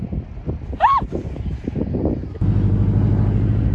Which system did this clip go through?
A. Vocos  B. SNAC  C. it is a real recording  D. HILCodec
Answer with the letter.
C